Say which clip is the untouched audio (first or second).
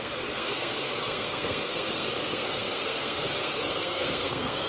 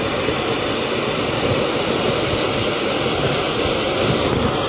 second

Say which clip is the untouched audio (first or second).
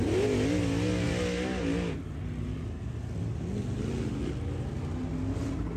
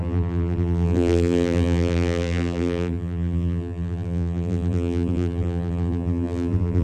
first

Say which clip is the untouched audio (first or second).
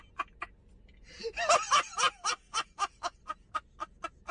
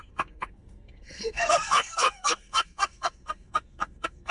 first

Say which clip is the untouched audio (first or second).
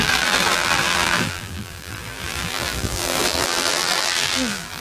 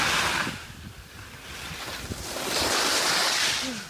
second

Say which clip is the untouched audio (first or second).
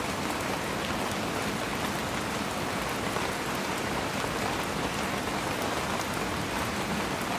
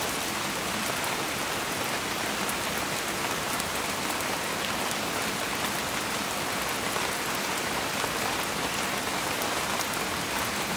first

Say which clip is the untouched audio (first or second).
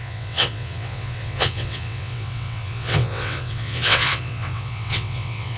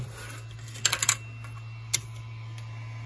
second